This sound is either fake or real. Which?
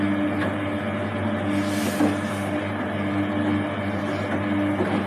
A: real